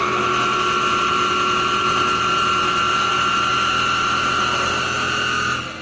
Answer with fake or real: real